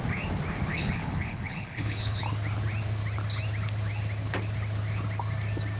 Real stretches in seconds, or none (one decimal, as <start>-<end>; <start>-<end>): 0.0-0.7; 2.2-5.8